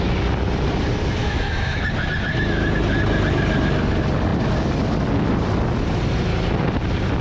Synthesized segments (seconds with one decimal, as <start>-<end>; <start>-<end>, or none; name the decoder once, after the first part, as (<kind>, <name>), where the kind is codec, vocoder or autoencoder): 1.2-1.8 (autoencoder, DAC-VAE)